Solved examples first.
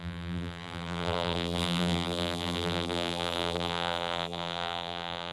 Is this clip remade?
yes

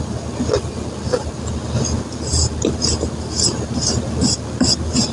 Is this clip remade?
no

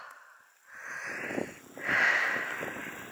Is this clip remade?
no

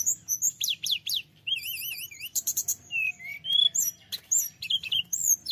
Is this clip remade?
yes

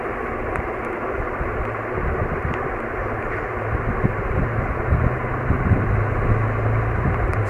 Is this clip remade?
no